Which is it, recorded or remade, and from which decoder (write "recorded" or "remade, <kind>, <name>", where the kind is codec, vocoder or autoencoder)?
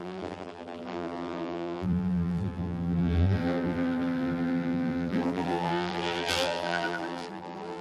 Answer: remade, vocoder, BigVGAN v2